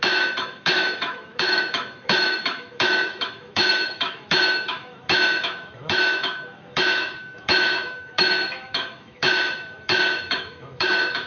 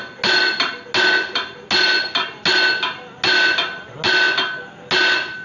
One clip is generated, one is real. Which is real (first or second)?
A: second